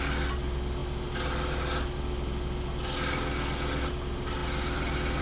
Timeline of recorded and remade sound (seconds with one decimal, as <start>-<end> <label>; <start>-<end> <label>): 0.0-5.2 recorded